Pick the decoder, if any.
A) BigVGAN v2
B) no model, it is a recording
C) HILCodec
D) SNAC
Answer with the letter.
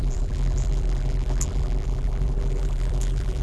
A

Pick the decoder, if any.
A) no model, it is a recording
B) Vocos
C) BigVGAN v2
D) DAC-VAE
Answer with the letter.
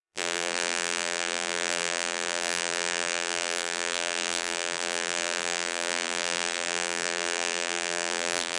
C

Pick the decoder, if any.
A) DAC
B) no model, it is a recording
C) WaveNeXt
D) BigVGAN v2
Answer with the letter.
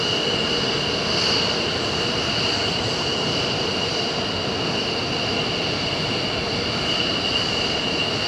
B